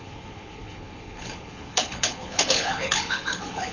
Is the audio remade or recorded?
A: remade